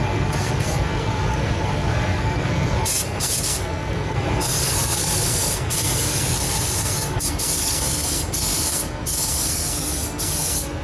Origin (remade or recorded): remade